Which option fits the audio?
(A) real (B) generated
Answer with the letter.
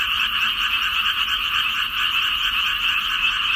A